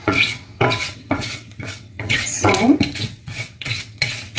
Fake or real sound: fake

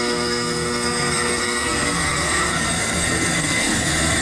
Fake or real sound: fake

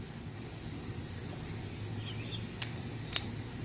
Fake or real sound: real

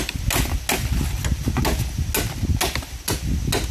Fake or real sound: real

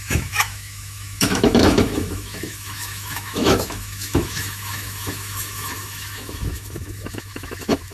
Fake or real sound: fake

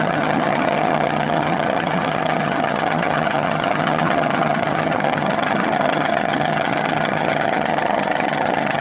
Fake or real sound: fake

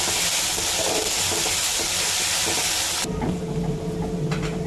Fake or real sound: real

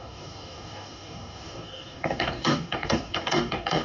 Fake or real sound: fake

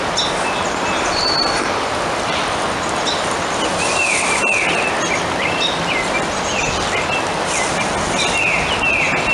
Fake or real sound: real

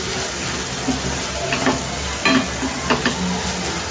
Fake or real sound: real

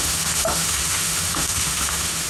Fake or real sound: fake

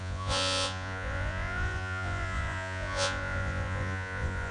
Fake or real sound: fake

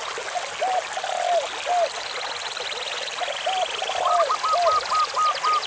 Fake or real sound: real